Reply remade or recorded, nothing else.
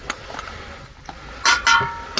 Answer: recorded